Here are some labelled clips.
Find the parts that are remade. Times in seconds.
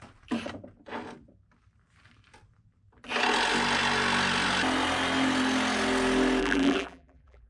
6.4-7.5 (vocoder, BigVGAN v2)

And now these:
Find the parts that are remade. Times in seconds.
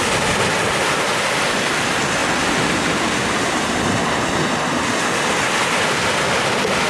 none